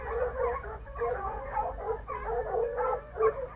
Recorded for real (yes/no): no